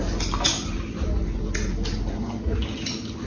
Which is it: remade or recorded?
recorded